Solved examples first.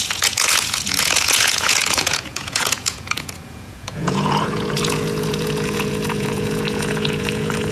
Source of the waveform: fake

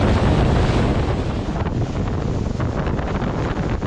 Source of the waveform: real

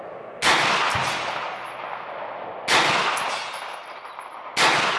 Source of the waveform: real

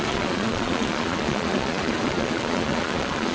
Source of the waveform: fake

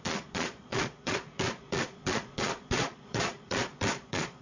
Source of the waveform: fake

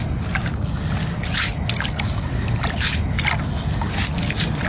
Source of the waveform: real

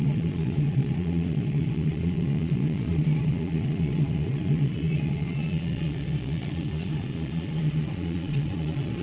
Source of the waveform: fake